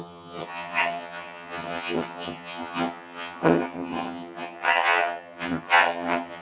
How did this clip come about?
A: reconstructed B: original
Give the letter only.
A